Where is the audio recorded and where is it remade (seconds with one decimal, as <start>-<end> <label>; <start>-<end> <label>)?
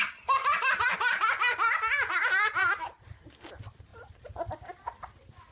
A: 0.0-2.6 recorded; 2.6-3.5 remade; 3.5-5.5 recorded